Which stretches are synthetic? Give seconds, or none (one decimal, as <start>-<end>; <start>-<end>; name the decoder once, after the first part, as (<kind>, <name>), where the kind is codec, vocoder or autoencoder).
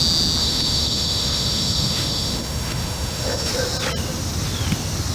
0.4-3.5 (autoencoder, DAC-VAE)